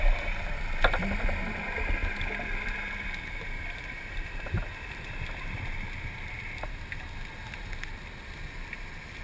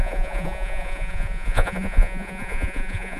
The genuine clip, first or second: first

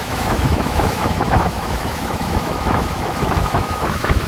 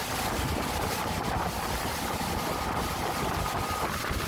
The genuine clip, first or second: second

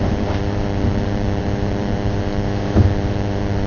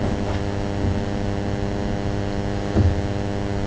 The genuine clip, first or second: second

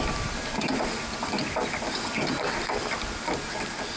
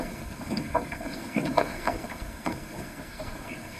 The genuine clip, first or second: first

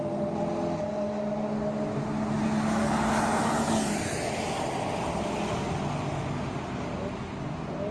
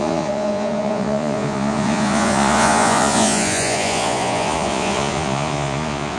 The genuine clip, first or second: first